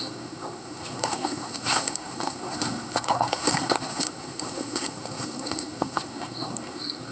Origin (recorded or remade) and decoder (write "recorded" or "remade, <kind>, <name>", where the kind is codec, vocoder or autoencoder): remade, codec, SNAC